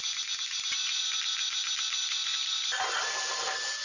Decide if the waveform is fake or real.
real